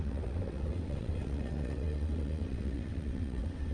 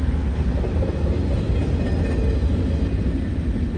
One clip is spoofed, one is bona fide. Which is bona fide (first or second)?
second